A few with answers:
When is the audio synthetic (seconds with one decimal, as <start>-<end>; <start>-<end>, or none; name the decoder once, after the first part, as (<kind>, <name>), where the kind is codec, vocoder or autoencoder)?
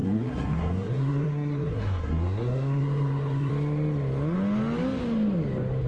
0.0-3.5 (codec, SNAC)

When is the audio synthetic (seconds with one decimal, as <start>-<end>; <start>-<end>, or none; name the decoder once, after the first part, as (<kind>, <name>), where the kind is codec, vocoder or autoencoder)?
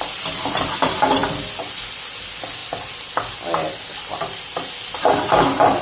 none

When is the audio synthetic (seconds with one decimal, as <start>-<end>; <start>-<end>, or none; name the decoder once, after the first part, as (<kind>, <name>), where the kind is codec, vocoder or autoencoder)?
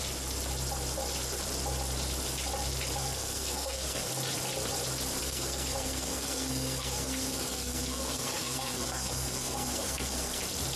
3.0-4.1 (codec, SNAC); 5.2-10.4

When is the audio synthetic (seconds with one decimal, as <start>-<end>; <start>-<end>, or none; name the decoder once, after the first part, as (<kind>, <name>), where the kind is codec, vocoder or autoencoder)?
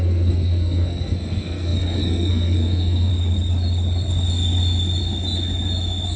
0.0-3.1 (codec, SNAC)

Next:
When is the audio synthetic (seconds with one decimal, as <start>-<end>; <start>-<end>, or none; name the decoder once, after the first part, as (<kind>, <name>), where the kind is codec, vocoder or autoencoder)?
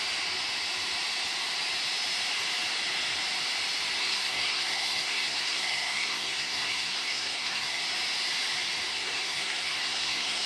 4.0-7.8 (codec, SNAC); 8.9-10.5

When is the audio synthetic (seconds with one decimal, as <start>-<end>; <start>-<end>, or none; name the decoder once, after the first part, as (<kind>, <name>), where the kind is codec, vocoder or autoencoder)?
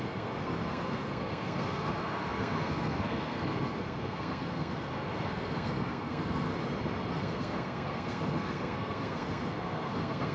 0.0-6.5 (codec, SNAC); 7.1-10.3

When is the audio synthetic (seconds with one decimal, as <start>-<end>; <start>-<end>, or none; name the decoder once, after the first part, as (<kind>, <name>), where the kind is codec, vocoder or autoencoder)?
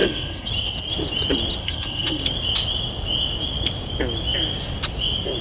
0.0-0.5 (codec, SNAC); 1.6-2.2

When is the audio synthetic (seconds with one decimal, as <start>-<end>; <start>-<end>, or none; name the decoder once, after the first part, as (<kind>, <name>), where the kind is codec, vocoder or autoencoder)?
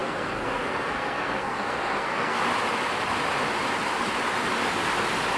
0.0-2.4 (codec, SNAC)